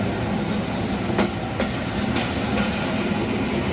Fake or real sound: real